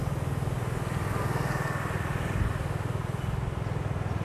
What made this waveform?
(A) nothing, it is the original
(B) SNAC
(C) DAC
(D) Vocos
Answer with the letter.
A